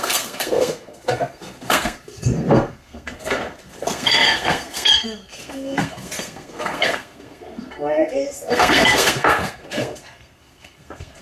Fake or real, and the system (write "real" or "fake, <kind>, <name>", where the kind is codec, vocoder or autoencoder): fake, codec, SNAC